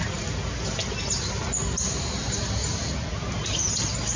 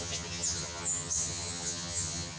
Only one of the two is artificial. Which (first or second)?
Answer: second